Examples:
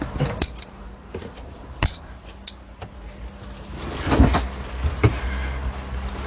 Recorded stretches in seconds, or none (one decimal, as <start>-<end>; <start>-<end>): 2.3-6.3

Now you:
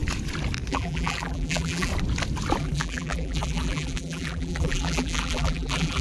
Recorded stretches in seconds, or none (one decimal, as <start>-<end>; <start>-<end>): 0.0-0.7; 1.9-2.6

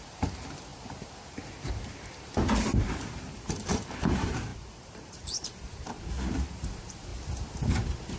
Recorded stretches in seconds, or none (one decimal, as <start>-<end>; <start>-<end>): 0.7-1.6; 7.1-8.2